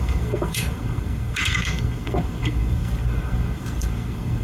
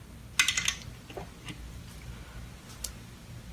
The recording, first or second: second